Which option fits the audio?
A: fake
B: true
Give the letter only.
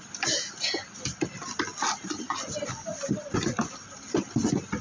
B